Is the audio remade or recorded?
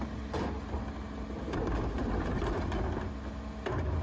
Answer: recorded